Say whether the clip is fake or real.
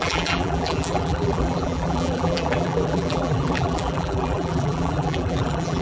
fake